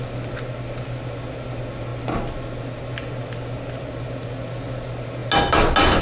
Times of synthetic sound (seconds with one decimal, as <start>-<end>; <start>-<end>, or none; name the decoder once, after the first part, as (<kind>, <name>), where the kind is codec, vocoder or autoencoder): none